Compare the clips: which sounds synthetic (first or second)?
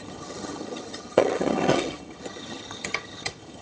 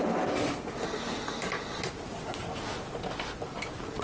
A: first